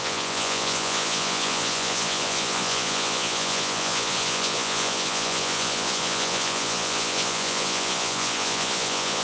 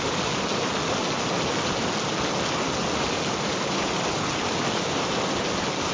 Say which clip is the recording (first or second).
second